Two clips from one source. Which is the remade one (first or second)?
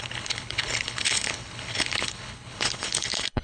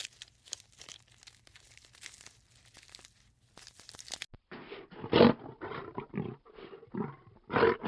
first